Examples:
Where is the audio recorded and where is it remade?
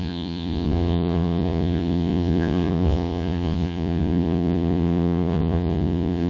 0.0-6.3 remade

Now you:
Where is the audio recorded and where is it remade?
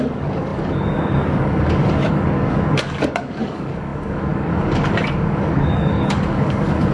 0.0-6.9 remade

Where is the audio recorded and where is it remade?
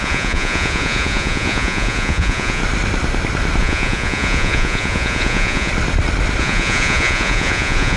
0.0-2.6 remade; 2.6-3.6 recorded; 3.6-5.7 remade; 5.7-6.4 recorded; 6.4-8.0 remade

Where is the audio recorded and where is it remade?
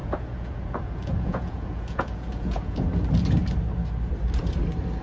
0.0-2.9 remade; 2.9-5.0 recorded